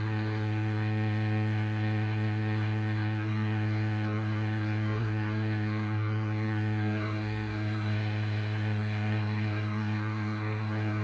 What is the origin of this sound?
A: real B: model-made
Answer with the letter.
B